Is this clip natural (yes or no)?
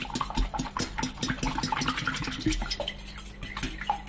yes